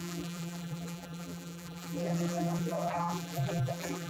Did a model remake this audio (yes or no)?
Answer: yes